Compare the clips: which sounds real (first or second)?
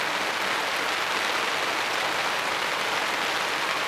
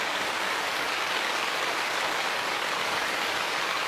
first